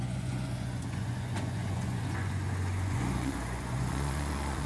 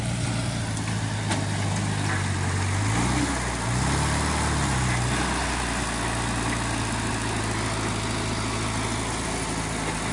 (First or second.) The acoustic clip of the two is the second